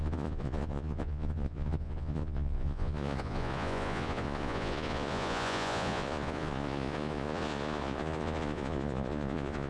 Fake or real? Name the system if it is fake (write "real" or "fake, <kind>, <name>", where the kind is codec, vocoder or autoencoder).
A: fake, vocoder, Vocos